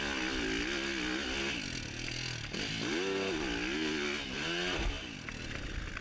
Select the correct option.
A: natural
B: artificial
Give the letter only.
A